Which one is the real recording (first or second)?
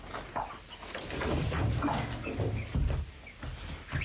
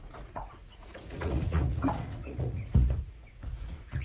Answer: first